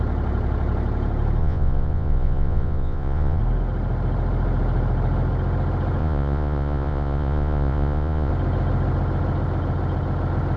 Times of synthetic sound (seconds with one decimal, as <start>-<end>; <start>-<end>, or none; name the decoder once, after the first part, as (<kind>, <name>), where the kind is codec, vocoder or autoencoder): 1.4-3.4 (vocoder, Vocos); 6.0-8.3